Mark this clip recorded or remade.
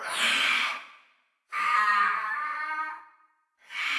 recorded